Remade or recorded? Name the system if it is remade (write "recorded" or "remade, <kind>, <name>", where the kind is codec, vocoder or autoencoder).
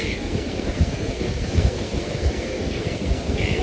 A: remade, codec, SNAC